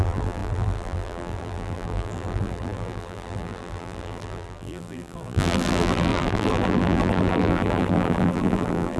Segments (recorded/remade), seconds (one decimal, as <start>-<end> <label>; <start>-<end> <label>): 0.0-9.0 remade